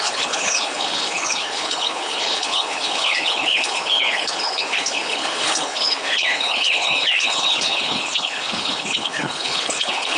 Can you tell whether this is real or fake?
fake